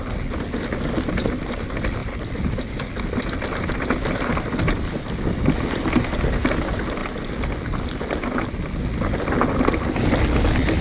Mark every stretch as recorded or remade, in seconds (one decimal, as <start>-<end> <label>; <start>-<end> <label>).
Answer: 0.0-10.8 recorded